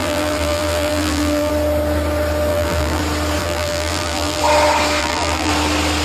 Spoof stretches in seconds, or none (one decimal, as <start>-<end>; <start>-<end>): 0.0-1.5; 2.5-3.0; 3.4-4.4; 5.0-5.5

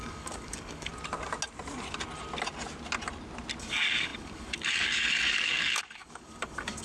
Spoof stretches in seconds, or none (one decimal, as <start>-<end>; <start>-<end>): 0.0-0.9; 3.6-6.8